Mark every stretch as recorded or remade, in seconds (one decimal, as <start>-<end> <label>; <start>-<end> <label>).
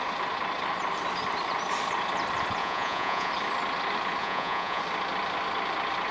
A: 0.0-2.6 recorded; 2.6-3.3 remade; 3.3-4.2 recorded; 4.2-4.8 remade; 4.8-6.1 recorded